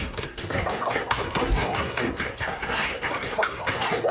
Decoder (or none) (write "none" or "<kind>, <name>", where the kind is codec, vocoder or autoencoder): codec, SNAC